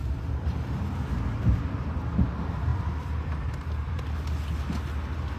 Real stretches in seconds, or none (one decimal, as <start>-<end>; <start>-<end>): 1.1-2.7; 4.0-5.4